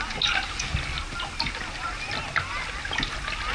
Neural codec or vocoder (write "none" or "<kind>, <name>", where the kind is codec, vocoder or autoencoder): none